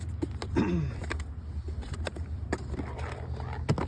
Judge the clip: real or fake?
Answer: real